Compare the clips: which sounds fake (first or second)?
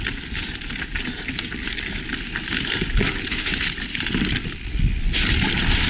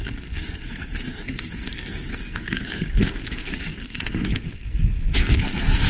second